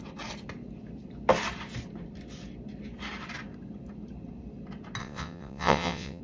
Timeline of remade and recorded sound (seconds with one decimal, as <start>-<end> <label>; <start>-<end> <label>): 0.0-5.0 recorded; 5.0-6.2 remade

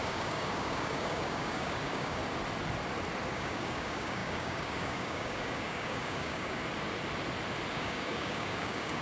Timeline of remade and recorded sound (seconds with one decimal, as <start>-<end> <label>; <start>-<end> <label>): 0.0-2.2 remade; 2.2-3.3 recorded; 3.3-6.6 remade; 6.6-7.7 recorded; 7.7-9.0 remade

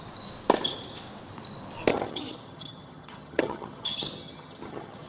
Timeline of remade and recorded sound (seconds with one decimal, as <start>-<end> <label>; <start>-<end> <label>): 0.0-1.9 recorded; 1.9-5.1 remade